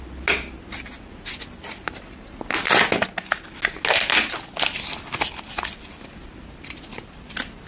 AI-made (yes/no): no